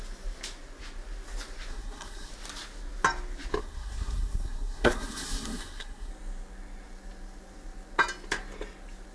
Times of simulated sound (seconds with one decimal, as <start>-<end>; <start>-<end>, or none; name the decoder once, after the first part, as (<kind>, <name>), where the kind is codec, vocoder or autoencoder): 1.7-2.3 (codec, SNAC); 3.6-6.1